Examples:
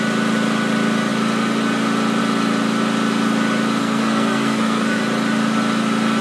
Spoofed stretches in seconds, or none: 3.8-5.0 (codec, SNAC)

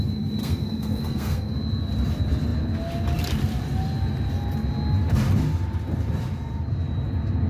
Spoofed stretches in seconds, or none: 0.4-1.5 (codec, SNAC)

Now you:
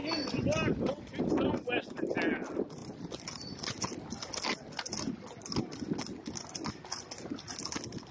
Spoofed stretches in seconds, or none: none

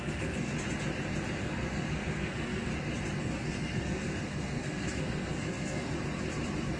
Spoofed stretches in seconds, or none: 0.0-0.5 (codec, SNAC); 1.4-2.7; 3.2-5.9

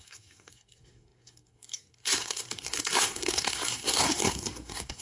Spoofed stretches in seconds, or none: 0.0-5.0 (codec, SNAC)